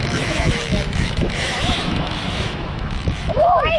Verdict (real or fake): fake